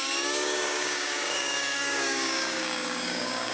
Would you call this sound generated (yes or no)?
yes